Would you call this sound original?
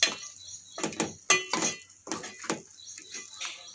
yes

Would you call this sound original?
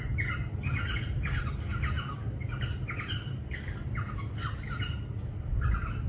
yes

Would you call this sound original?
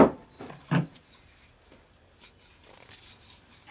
yes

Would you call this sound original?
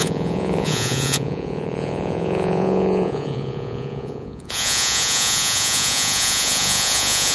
no